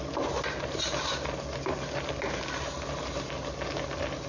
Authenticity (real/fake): real